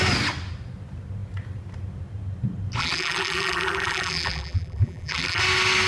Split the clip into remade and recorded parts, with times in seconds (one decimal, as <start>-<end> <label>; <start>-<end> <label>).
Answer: 0.0-2.8 recorded; 2.8-5.4 remade; 5.4-5.9 recorded